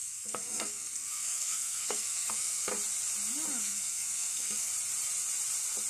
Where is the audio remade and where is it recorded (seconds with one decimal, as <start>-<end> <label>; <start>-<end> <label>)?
0.0-2.7 remade; 2.7-3.6 recorded; 3.6-4.7 remade; 4.7-5.9 recorded